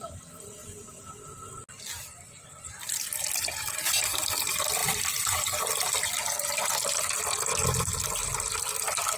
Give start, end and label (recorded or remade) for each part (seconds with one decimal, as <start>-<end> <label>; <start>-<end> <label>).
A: 0.0-4.8 recorded; 4.8-5.4 remade; 5.4-9.2 recorded